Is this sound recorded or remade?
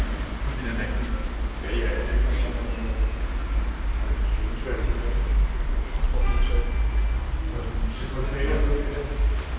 recorded